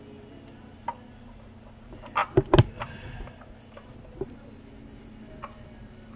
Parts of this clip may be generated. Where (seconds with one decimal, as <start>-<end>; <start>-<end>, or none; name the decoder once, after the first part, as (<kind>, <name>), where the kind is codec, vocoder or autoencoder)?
none